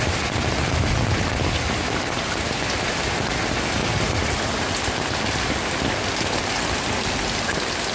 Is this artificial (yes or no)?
no